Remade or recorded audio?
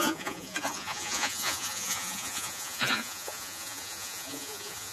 remade